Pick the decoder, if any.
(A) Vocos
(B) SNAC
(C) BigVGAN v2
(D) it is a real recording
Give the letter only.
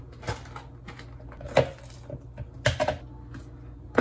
D